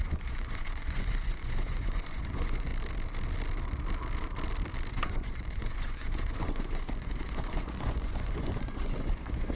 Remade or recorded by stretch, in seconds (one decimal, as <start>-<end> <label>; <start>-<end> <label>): 0.0-2.7 remade; 2.7-4.9 recorded; 4.9-9.5 remade